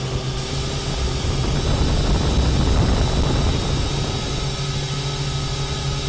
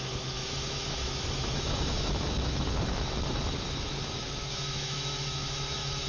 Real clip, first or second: first